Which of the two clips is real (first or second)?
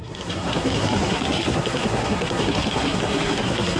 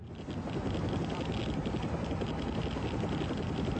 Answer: second